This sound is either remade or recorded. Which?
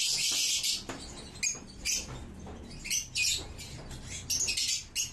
recorded